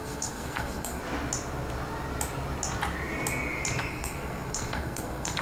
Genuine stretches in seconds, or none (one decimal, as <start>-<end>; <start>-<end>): 1.0-3.9